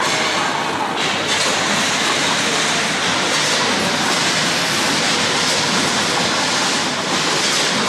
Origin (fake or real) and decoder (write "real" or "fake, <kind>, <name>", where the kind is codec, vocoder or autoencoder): real